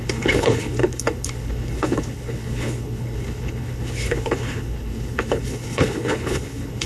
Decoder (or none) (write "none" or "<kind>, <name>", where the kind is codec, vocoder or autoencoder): codec, HILCodec